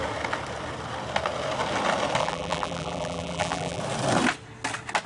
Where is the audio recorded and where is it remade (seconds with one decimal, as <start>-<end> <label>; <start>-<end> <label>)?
0.0-2.2 recorded; 2.2-3.8 remade; 3.8-5.1 recorded